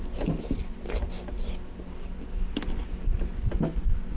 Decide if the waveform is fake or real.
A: real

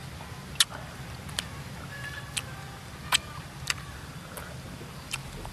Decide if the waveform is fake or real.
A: real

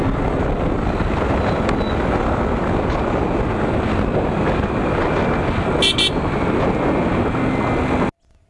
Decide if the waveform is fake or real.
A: real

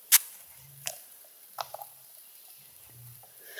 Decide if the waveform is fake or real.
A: fake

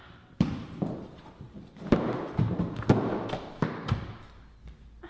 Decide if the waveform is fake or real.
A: real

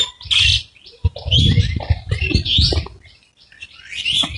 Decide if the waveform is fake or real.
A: real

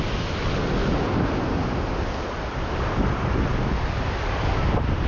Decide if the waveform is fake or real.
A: real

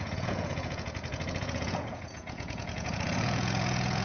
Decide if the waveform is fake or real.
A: fake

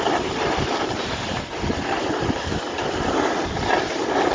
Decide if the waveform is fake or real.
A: real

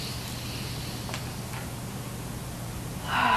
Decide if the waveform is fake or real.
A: real